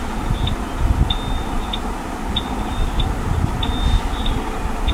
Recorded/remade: recorded